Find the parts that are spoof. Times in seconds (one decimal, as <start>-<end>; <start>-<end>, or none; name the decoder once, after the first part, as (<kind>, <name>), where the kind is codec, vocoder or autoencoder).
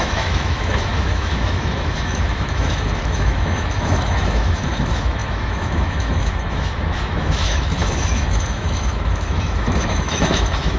0.0-10.8 (autoencoder, DAC-VAE)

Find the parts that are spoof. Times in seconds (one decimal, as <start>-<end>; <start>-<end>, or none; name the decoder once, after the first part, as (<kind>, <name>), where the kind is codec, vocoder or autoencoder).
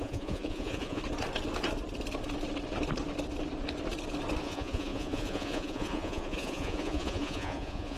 0.0-1.0 (vocoder, Vocos); 4.4-8.0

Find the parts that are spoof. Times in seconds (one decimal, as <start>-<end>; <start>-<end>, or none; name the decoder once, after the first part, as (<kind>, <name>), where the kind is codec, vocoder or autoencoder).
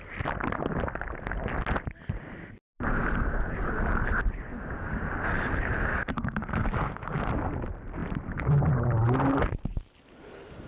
5.9-7.3 (codec, DAC)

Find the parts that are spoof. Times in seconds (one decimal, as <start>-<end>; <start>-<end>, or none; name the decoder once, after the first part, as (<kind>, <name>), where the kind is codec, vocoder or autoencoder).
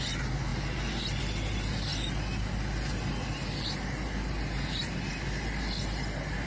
none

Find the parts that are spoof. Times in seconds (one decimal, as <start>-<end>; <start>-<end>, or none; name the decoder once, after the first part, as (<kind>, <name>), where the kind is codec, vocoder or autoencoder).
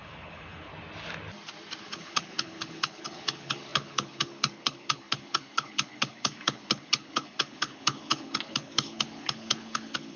0.0-0.7 (codec, HILCodec); 1.8-10.2